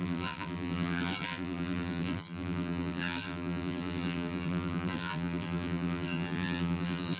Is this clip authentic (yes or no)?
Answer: no